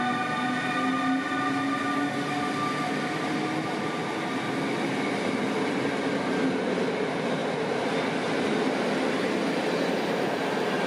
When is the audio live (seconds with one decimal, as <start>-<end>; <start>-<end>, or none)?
0.0-10.9